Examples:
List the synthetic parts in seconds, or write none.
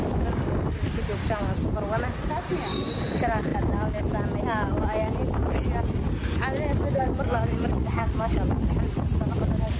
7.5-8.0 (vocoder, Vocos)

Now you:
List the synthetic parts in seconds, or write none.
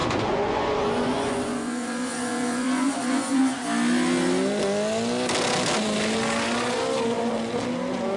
0.0-3.4 (vocoder, Vocos)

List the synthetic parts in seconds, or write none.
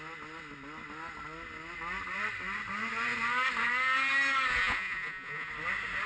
4.6-5.5 (vocoder, Vocos)